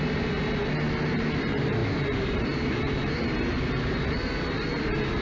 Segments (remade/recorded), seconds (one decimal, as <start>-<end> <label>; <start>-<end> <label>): 0.0-0.4 remade; 0.4-1.2 recorded; 1.2-5.2 remade